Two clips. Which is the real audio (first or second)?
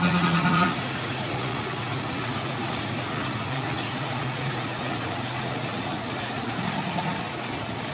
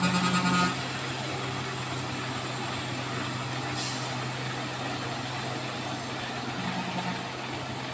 second